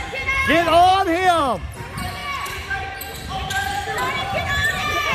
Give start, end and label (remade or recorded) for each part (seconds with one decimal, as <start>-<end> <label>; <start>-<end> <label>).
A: 0.0-0.9 remade; 0.9-1.4 recorded; 1.4-2.2 remade; 2.2-3.7 recorded; 3.7-5.1 remade